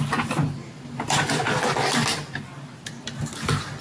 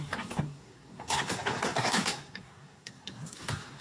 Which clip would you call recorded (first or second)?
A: first